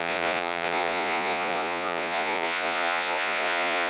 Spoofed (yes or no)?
yes